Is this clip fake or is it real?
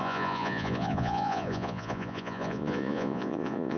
fake